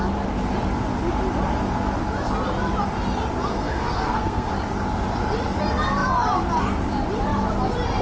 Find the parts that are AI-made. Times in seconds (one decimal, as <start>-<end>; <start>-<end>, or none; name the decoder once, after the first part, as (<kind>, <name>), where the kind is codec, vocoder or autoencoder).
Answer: 3.5-4.5 (codec, SNAC)